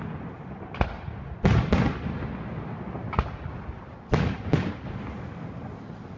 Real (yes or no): yes